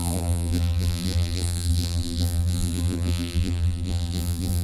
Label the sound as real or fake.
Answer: fake